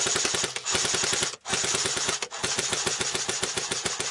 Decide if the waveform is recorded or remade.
recorded